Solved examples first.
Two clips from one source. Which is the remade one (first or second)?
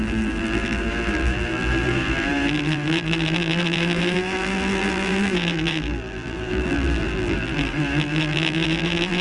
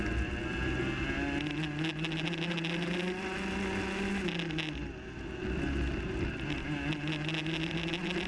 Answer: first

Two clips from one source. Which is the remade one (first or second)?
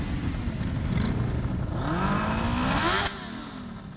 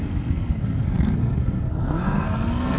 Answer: second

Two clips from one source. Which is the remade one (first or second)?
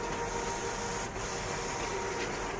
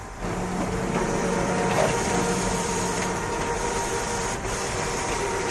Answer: second